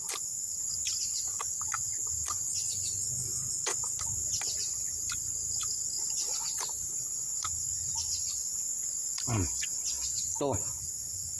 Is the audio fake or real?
real